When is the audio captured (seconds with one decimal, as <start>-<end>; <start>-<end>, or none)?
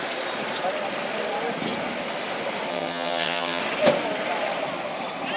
0.0-2.7; 3.6-5.4